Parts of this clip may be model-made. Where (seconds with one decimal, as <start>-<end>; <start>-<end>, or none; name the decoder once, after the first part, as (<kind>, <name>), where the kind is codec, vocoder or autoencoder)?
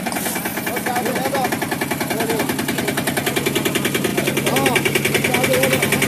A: none